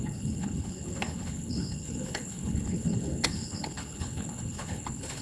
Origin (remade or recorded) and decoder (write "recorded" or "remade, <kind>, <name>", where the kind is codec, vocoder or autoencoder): remade, codec, HILCodec